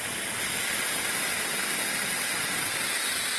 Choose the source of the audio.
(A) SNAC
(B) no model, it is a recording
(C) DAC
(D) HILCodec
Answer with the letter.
B